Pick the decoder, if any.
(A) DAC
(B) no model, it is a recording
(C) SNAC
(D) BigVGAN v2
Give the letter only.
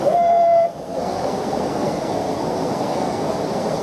C